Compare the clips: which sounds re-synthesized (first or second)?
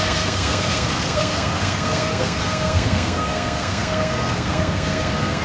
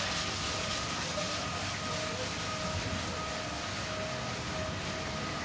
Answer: first